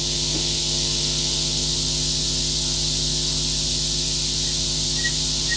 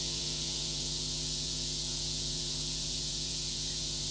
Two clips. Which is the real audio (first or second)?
first